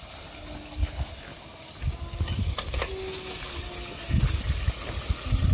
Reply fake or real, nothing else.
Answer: real